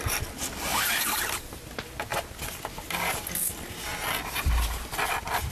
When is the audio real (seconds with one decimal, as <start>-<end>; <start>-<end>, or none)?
0.0-0.7; 1.3-5.5